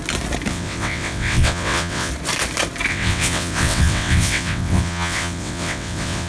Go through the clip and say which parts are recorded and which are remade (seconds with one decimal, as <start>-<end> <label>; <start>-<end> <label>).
0.0-0.5 recorded; 0.5-2.1 remade; 2.1-2.9 recorded; 2.9-6.3 remade